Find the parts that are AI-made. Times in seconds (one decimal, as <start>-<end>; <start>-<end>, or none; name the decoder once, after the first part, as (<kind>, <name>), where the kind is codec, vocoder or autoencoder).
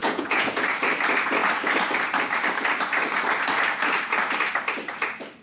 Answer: 0.0-0.5 (vocoder, Vocos)